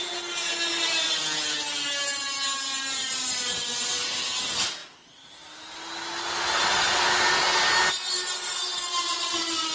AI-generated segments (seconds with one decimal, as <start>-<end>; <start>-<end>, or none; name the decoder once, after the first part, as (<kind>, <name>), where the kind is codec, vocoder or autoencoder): none